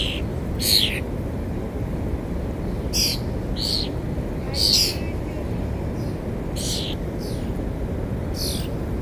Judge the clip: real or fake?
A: real